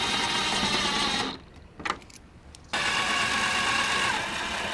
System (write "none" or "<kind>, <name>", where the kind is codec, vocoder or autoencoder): none